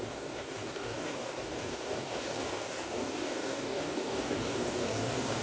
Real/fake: fake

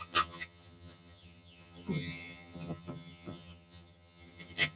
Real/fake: fake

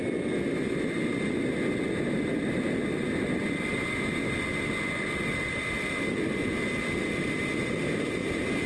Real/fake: real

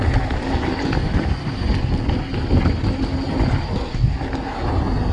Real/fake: real